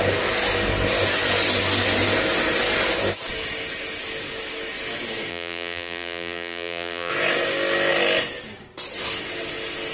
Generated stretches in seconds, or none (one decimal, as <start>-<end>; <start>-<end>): 5.3-7.1